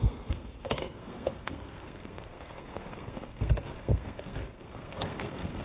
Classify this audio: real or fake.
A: fake